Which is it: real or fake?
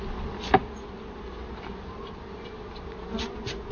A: real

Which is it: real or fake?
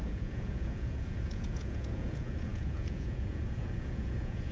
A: fake